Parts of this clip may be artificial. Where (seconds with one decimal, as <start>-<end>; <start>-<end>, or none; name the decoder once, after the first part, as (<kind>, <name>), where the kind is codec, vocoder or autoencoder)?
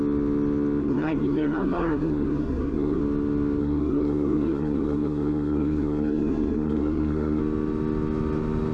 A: 0.8-3.0 (codec, SNAC); 3.6-7.4